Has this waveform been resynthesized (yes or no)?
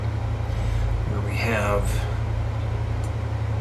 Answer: no